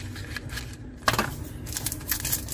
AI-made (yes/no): no